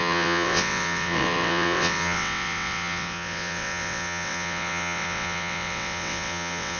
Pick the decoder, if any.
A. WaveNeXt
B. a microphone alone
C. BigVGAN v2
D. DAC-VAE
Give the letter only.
A